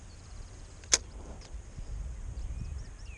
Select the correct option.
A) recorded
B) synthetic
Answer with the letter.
A